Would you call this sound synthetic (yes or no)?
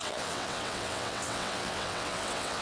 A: yes